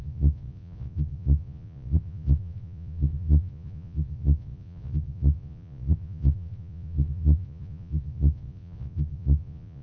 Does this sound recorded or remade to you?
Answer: remade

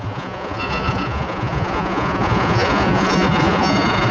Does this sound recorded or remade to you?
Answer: remade